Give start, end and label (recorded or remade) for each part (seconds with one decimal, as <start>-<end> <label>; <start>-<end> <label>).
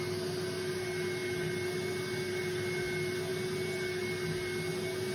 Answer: 0.0-5.1 recorded